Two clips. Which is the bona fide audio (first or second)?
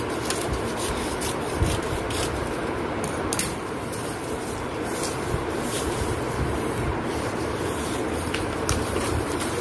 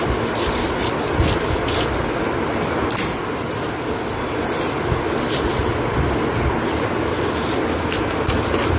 second